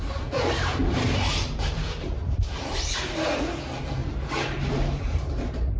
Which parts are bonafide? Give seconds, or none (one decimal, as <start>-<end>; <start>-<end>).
0.0-0.8; 3.1-4.0